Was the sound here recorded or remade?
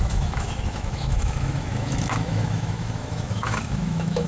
remade